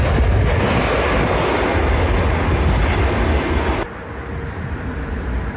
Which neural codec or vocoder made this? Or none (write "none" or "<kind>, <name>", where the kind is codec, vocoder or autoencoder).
none